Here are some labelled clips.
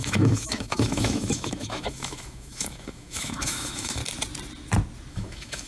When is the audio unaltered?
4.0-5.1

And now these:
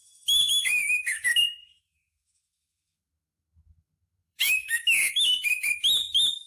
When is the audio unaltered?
5.8-6.5

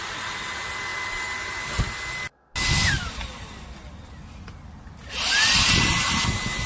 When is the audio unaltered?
0.0-6.7

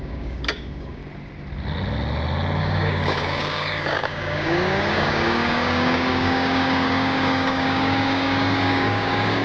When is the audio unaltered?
1.0-2.6

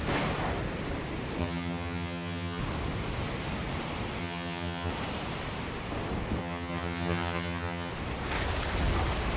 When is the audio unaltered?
0.0-1.4; 2.6-4.2; 4.9-6.4; 7.9-9.4